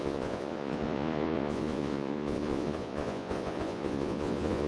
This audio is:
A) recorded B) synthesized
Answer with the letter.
B